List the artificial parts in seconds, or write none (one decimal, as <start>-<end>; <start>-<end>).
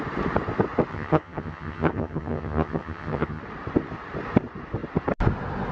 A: 0.9-3.4